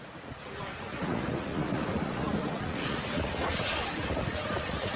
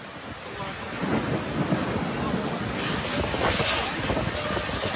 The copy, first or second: first